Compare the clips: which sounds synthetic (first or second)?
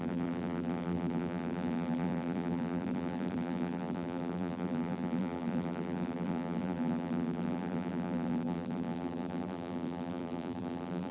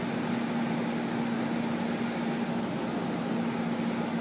first